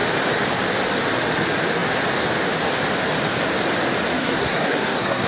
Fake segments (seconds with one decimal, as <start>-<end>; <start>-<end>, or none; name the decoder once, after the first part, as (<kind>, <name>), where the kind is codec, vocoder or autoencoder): 4.2-5.3 (codec, SNAC)